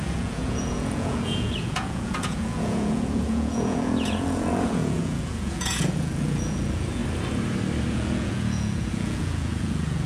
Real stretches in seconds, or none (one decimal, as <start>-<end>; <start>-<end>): 7.0-7.9